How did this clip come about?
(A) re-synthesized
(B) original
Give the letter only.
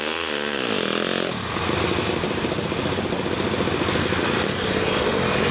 B